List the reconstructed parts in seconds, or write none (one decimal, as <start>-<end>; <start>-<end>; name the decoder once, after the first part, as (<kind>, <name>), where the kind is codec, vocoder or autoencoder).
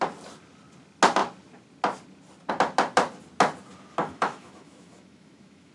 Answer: 4.0-5.7 (autoencoder, DAC-VAE)